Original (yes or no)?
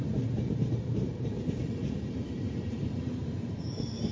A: no